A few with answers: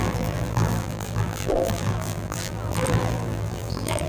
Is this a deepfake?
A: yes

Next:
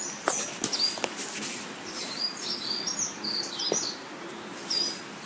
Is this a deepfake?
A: no